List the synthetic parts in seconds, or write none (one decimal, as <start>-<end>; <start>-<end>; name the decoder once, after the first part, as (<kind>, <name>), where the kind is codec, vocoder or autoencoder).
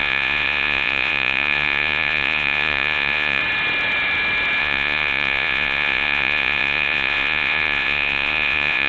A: 0.0-3.4 (vocoder, Vocos); 4.6-8.9